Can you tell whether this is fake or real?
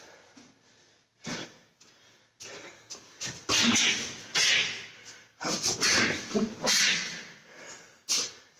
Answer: real